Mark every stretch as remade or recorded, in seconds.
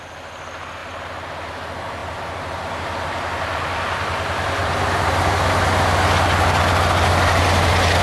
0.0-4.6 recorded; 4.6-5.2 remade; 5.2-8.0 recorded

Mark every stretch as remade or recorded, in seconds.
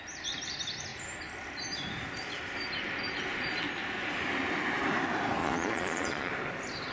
0.0-5.4 recorded; 5.4-6.3 remade; 6.3-6.9 recorded